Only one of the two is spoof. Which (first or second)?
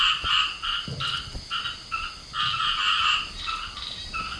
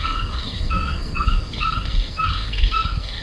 second